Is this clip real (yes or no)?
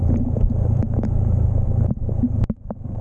no